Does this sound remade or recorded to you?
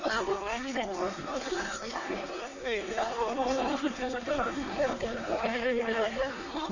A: remade